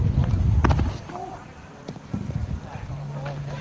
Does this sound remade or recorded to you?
recorded